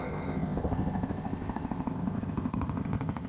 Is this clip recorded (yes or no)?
no